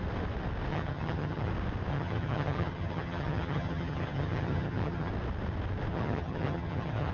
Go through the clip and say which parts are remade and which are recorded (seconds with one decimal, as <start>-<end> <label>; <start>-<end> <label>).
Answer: 0.0-0.7 recorded; 0.7-1.5 remade; 1.5-1.9 recorded; 1.9-5.1 remade; 5.1-5.9 recorded; 5.9-7.1 remade